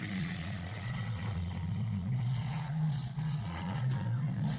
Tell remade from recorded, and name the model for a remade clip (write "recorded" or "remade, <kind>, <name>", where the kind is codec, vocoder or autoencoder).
remade, vocoder, Vocos